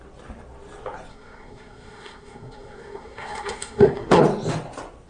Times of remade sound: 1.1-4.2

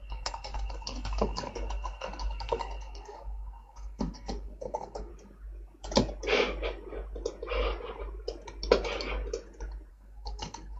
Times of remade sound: 0.0-5.1; 9.9-10.8